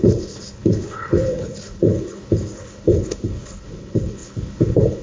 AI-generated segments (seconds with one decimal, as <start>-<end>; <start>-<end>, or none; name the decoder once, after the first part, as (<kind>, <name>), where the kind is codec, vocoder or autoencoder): 0.0-5.0 (codec, HILCodec)